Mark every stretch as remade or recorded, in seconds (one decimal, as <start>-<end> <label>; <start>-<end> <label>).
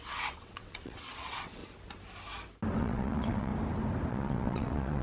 0.0-1.6 remade; 1.6-2.8 recorded; 2.8-3.5 remade; 3.5-4.1 recorded; 4.1-5.0 remade